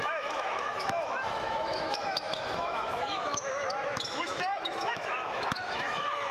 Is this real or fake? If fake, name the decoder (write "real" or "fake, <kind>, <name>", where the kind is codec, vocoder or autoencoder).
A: fake, autoencoder, DAC-VAE